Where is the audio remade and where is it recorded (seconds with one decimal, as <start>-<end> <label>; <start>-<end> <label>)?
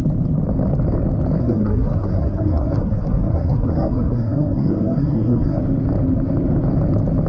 0.0-1.4 recorded; 1.4-5.6 remade; 5.6-7.3 recorded